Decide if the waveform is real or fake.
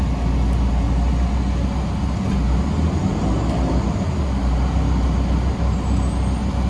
real